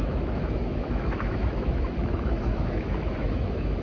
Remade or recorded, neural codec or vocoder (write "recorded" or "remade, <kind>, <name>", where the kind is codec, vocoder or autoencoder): remade, autoencoder, DAC-VAE